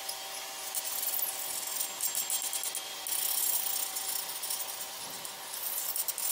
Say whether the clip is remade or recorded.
recorded